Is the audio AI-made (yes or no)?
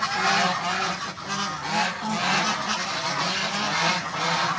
no